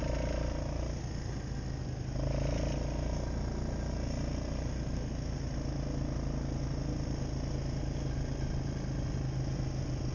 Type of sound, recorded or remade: recorded